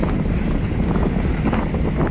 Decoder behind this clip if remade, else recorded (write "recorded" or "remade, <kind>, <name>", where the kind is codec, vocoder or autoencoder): recorded